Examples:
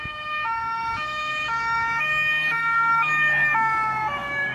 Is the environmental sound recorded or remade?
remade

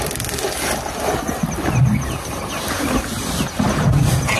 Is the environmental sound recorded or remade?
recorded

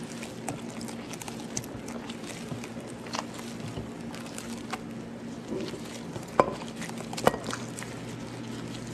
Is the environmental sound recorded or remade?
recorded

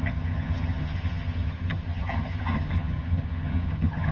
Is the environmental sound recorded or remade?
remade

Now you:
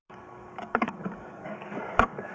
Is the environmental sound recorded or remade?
remade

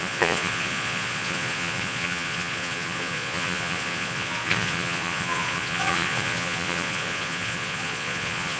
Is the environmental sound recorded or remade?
remade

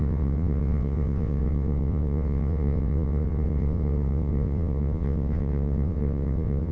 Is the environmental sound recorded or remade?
remade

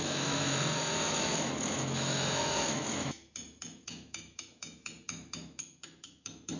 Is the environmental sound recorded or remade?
remade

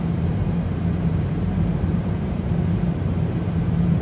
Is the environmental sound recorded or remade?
remade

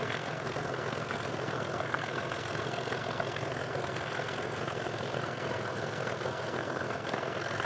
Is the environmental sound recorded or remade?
remade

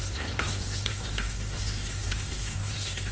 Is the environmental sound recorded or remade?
remade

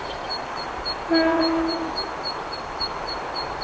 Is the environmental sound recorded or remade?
remade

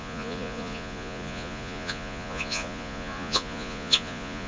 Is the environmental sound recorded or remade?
remade